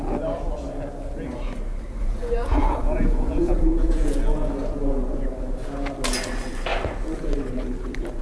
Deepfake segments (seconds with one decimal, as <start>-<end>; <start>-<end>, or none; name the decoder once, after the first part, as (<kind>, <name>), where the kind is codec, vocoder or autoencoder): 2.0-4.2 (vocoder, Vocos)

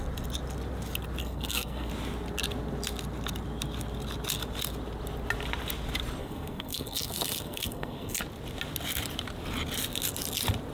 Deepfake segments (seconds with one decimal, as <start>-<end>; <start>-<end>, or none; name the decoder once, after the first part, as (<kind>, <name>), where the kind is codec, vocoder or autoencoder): 1.2-1.9 (codec, SNAC); 6.2-8.2

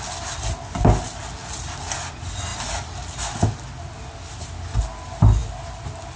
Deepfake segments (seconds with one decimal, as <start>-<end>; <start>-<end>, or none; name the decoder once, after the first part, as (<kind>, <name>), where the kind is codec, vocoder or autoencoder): none

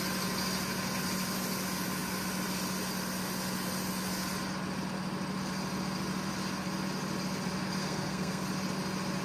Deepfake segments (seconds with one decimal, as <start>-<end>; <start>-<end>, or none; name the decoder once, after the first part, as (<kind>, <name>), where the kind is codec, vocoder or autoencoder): 7.8-8.4 (codec, SNAC)

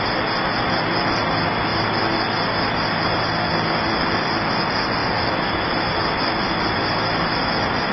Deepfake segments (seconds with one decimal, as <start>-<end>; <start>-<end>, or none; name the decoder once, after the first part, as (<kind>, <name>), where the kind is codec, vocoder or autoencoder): none